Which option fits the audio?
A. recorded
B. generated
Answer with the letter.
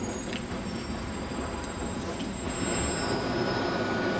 A